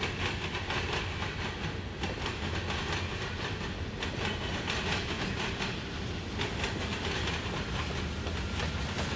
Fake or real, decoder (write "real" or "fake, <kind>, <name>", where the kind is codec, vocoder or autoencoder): real